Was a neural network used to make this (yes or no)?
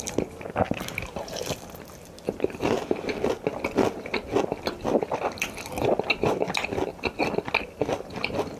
no